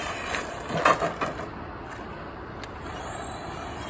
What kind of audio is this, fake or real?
real